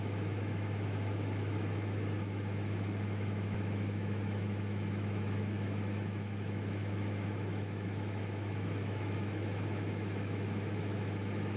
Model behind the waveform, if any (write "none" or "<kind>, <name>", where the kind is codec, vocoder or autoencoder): autoencoder, DAC-VAE